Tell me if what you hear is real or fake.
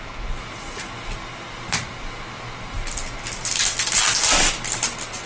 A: real